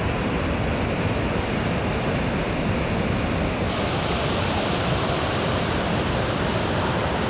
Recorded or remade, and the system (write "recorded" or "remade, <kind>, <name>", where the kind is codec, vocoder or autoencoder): recorded